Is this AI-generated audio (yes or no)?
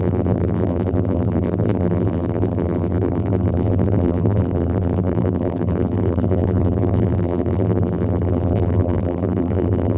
yes